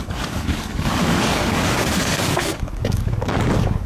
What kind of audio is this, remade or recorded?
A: remade